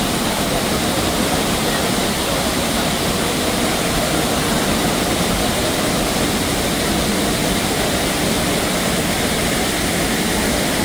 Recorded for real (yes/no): no